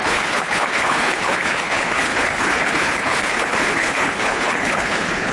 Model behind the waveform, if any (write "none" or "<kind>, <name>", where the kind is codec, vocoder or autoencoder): codec, HILCodec